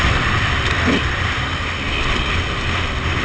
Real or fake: real